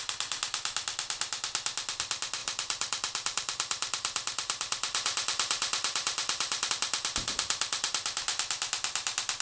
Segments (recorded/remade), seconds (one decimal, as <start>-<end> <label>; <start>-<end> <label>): 0.0-2.4 recorded; 2.4-6.7 remade; 6.7-7.2 recorded; 7.2-7.9 remade; 7.9-9.4 recorded